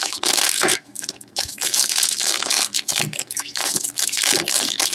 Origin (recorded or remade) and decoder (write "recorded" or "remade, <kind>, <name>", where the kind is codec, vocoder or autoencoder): remade, codec, SNAC